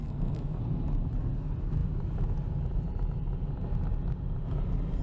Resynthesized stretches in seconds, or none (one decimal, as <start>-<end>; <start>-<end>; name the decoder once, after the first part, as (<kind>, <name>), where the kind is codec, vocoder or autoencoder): 0.0-0.6 (codec, SNAC)